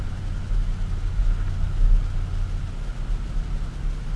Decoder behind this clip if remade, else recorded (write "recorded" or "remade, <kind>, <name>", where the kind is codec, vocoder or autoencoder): recorded